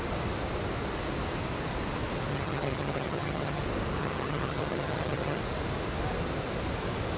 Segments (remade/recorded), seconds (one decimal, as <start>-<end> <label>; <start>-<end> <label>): 0.0-2.3 recorded; 2.3-3.6 remade; 3.6-4.0 recorded; 4.0-5.4 remade; 5.4-7.2 recorded